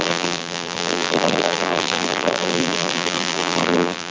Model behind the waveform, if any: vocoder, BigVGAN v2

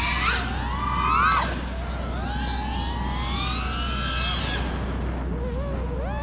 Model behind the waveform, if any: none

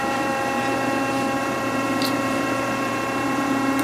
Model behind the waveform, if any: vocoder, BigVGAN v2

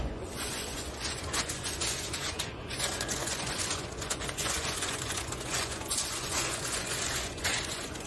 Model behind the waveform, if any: vocoder, Vocos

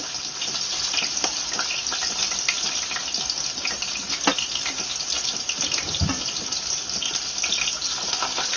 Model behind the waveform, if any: none